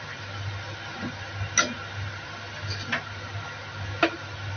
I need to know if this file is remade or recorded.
recorded